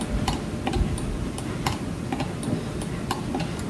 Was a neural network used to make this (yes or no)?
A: no